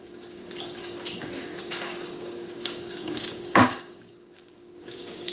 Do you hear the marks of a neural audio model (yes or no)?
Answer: yes